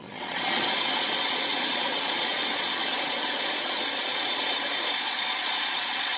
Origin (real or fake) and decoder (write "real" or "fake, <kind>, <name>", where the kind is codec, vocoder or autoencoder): fake, vocoder, Vocos